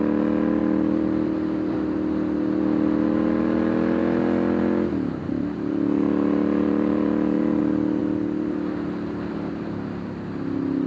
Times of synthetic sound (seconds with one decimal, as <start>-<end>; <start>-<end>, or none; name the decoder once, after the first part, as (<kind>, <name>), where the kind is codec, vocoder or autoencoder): 0.6-2.6 (vocoder, BigVGAN v2); 5.2-7.6; 8.0-9.5

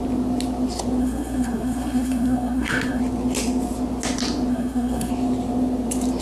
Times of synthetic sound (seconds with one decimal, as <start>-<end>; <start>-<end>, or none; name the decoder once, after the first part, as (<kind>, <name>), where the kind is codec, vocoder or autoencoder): 1.0-3.0 (codec, SNAC); 4.5-5.1